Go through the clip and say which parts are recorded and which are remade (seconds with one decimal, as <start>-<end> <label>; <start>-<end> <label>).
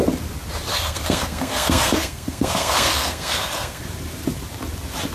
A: 0.0-0.7 recorded; 0.7-3.8 remade; 3.8-5.1 recorded